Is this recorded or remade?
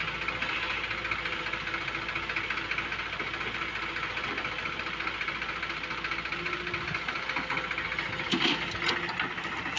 recorded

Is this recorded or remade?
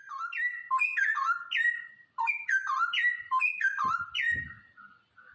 recorded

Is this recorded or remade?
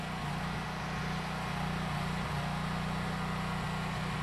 recorded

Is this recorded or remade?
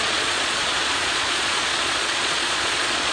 remade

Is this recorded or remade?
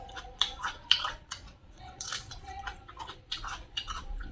remade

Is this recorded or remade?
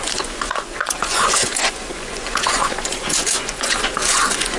remade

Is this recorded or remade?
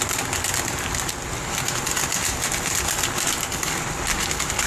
recorded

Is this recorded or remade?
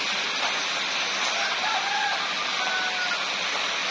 recorded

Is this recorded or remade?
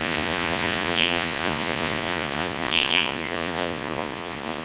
remade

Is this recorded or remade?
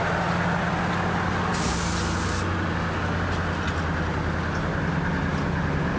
recorded